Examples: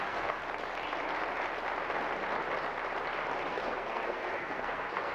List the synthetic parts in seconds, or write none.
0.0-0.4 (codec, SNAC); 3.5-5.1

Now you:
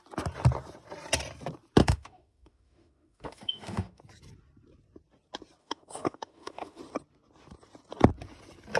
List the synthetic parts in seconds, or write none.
1.8-4.0 (autoencoder, DAC-VAE); 5.6-6.8

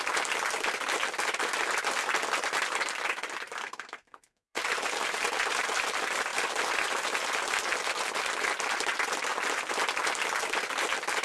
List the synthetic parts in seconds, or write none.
3.6-4.6 (codec, SNAC)

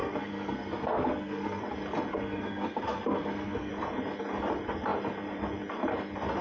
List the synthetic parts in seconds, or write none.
0.0-1.6 (codec, SNAC); 2.1-3.7

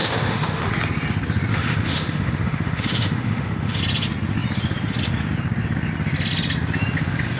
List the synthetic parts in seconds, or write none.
0.0-0.7 (autoencoder, DAC-VAE); 1.5-3.8